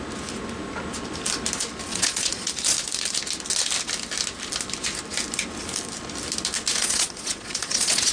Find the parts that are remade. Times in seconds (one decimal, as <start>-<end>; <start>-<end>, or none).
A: 1.9-2.5; 6.8-8.1